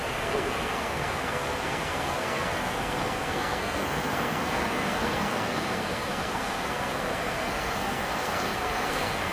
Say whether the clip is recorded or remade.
remade